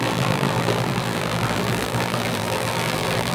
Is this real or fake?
fake